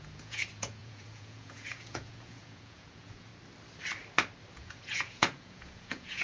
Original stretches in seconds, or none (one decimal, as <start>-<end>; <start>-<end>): 3.3-4.5